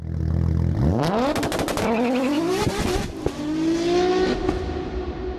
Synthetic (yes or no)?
no